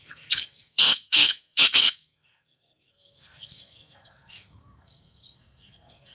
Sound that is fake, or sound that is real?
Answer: fake